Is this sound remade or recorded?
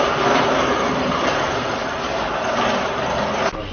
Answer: remade